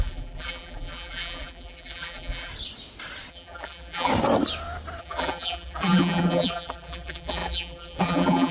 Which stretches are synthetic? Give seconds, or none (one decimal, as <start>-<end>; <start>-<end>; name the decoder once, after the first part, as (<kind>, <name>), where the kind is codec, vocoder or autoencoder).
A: 0.0-2.5 (vocoder, BigVGAN v2); 3.3-4.1; 5.0-8.5